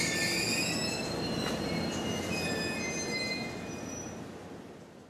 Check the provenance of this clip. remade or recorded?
recorded